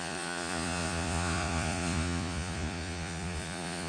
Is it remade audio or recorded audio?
remade